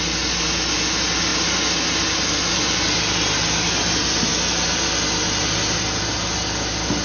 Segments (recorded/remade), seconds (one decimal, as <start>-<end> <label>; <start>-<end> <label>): 0.0-7.0 recorded